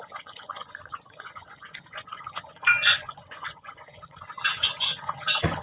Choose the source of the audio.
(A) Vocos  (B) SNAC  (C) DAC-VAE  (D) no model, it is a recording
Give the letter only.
A